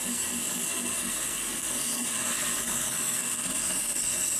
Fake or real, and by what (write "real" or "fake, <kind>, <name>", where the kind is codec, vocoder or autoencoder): fake, codec, SNAC